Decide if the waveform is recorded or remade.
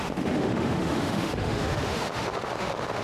remade